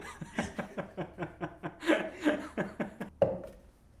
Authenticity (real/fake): real